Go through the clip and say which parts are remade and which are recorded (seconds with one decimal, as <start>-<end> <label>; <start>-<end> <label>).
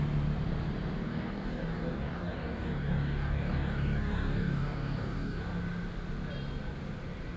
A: 0.0-1.0 recorded; 1.0-5.4 remade; 5.4-7.4 recorded